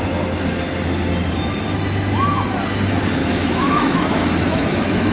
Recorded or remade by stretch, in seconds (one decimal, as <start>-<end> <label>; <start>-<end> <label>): 0.0-3.2 recorded; 3.2-5.1 remade